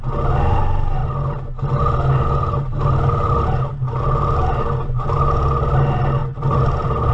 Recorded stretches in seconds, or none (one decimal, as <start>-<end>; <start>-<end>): 0.0-6.2